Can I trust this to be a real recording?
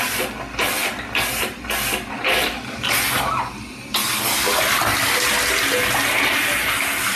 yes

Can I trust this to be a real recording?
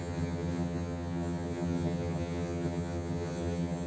no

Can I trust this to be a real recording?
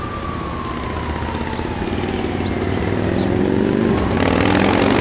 yes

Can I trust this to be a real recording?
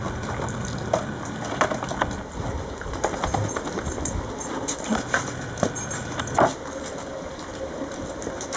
yes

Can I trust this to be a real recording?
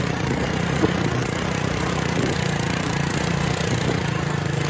no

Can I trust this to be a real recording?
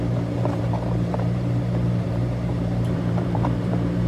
no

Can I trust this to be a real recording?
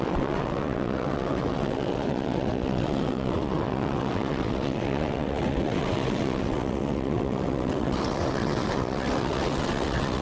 no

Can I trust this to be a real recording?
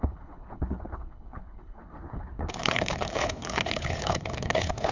no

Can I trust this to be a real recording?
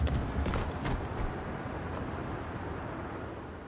yes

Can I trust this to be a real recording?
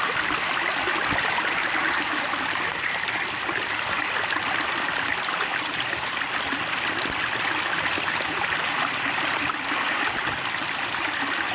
yes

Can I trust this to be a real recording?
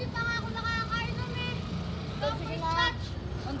yes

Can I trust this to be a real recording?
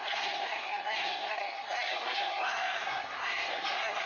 no